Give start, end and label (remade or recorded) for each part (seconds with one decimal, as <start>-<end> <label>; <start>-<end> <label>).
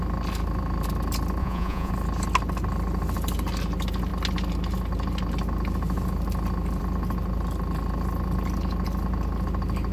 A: 0.0-1.4 recorded; 1.4-1.9 remade; 1.9-9.9 recorded